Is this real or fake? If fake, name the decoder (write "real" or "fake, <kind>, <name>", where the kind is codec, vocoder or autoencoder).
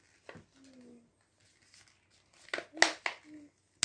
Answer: real